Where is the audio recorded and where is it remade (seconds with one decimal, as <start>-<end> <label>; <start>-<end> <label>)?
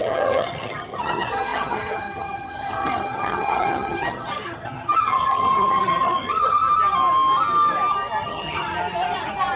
0.0-6.6 remade; 6.6-8.2 recorded; 8.2-8.7 remade; 8.7-9.6 recorded